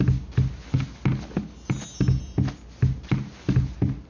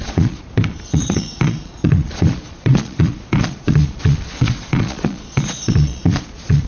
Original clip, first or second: first